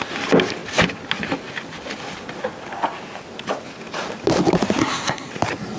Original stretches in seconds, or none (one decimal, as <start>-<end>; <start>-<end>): 0.0-4.8; 5.3-5.8